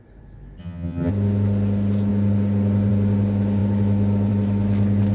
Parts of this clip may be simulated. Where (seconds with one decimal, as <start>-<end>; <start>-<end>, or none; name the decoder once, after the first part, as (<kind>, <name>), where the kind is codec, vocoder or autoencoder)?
0.6-1.1 (vocoder, HiFi-GAN)